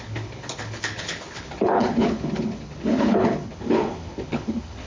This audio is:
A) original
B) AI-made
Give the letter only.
B